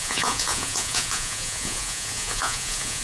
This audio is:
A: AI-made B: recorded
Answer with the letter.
A